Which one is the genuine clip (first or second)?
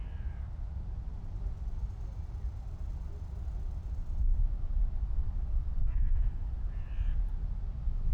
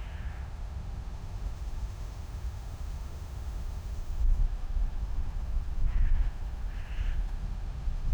first